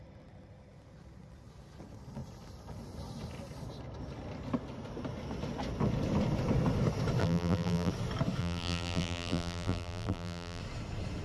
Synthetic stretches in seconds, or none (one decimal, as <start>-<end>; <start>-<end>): 7.2-7.9; 8.4-10.6